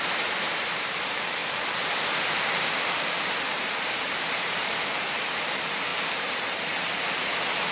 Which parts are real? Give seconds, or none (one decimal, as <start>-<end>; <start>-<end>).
1.4-3.0